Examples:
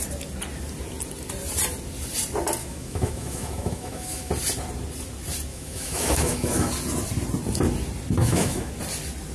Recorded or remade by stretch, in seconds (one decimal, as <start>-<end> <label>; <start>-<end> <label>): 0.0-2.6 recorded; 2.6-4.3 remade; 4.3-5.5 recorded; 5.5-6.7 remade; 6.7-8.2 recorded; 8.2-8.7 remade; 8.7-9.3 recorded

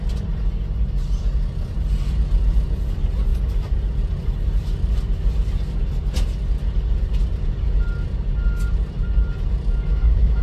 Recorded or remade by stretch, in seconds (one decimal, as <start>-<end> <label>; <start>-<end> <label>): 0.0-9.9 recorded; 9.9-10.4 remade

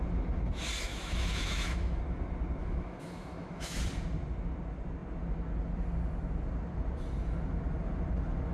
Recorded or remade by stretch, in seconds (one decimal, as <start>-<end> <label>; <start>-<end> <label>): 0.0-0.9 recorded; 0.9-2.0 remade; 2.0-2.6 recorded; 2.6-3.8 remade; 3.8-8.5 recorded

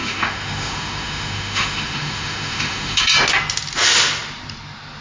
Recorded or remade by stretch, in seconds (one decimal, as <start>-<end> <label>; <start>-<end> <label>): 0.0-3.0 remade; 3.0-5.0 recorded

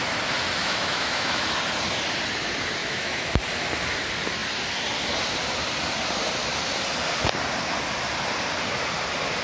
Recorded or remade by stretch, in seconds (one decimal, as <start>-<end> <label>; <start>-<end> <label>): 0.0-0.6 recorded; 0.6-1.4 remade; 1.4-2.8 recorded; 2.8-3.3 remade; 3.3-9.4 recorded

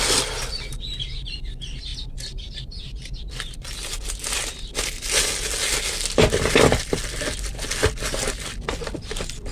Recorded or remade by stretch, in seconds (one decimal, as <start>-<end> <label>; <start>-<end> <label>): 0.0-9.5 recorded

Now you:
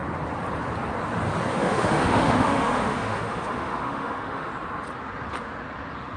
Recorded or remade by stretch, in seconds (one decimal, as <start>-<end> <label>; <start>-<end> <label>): 0.0-1.5 recorded; 1.5-4.5 remade; 4.5-6.2 recorded

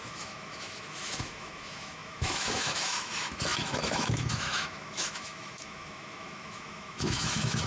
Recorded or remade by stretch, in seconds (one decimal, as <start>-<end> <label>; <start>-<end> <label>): 0.0-7.7 remade